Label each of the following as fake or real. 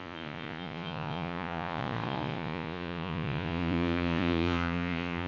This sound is fake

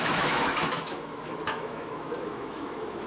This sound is fake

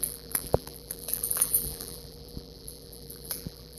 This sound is fake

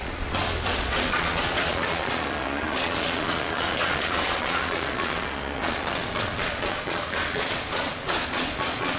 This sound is fake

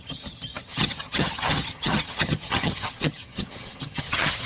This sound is fake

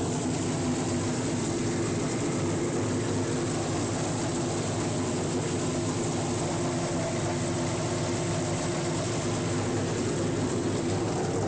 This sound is real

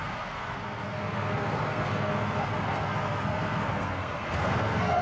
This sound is fake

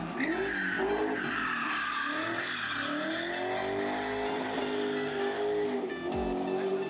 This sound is real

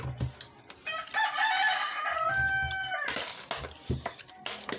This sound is real